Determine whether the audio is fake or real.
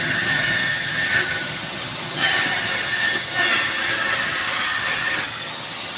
fake